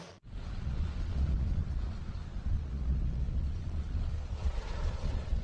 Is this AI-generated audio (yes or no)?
yes